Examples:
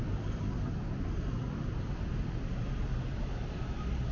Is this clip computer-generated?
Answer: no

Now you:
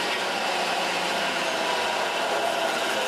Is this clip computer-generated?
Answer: no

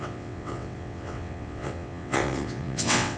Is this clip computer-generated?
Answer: yes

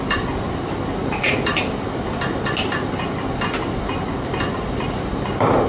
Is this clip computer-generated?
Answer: no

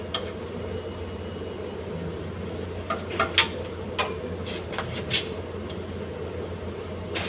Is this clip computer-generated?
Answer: no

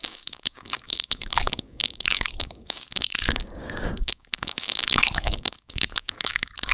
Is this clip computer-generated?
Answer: yes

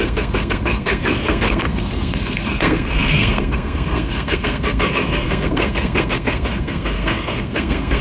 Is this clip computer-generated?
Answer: yes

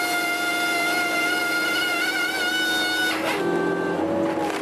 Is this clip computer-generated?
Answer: no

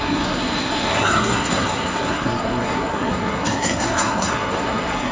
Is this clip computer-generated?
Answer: yes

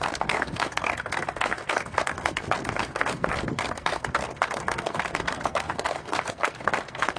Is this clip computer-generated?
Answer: yes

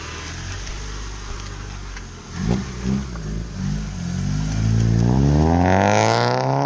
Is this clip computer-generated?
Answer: no